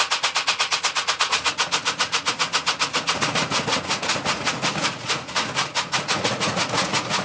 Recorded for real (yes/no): no